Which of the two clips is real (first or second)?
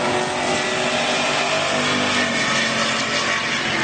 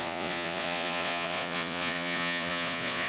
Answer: first